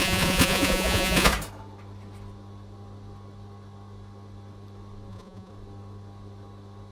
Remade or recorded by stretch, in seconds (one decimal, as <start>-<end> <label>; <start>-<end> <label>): 0.0-1.3 remade; 1.3-5.1 recorded; 5.1-5.5 remade; 5.5-6.9 recorded

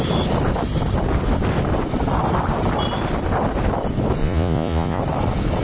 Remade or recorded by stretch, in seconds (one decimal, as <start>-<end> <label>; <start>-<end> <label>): 0.0-4.2 recorded; 4.2-5.0 remade; 5.0-5.6 recorded

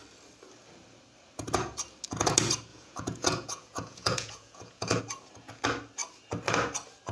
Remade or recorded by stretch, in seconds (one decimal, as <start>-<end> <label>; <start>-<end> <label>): 0.0-2.7 recorded; 2.7-5.0 remade; 5.0-7.1 recorded

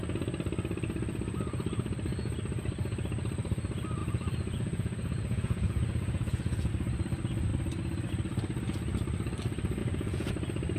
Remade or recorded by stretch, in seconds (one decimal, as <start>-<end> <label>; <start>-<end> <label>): 0.0-4.0 recorded; 4.0-6.7 remade; 6.7-9.8 recorded; 9.8-10.3 remade; 10.3-10.8 recorded

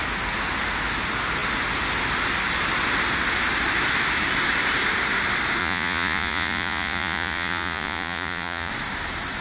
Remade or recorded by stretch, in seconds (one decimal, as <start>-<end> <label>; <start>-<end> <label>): 0.0-5.6 recorded; 5.6-8.7 remade; 8.7-9.4 recorded

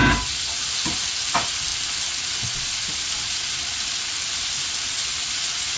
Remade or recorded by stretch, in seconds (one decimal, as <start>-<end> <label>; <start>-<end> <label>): 0.0-5.8 recorded

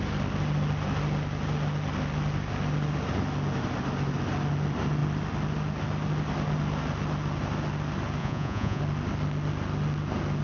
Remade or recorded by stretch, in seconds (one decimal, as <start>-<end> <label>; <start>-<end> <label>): 0.0-8.2 recorded; 8.2-8.8 remade; 8.8-10.4 recorded